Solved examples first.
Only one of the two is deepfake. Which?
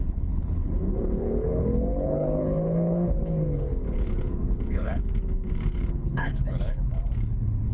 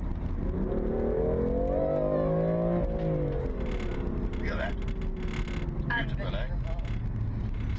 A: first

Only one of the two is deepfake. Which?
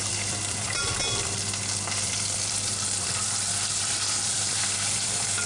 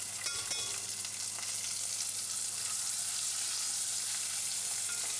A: first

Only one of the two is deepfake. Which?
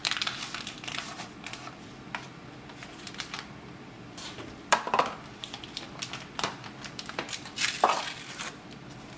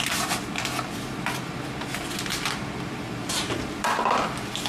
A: first